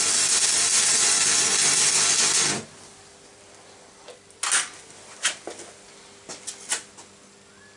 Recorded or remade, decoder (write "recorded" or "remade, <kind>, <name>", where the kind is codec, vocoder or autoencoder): recorded